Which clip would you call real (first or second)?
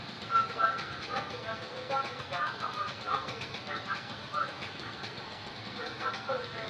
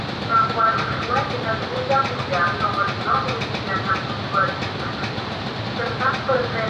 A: second